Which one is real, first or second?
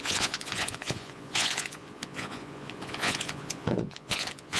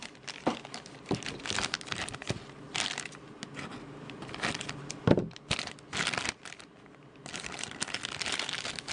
second